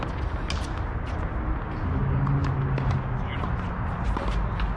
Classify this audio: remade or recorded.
recorded